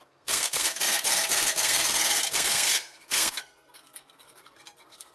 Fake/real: fake